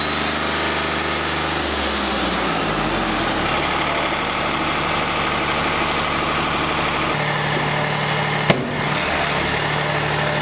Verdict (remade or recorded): recorded